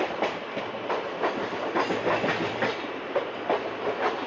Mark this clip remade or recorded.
remade